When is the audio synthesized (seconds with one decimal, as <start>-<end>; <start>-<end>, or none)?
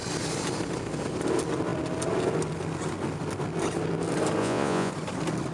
4.4-4.9